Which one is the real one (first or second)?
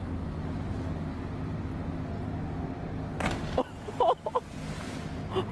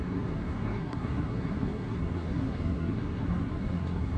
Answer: first